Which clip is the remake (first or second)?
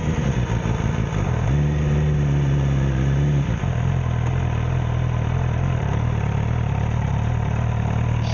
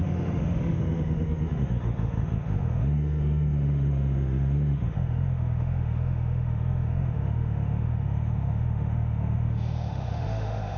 second